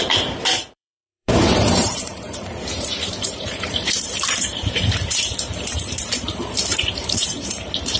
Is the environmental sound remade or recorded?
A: remade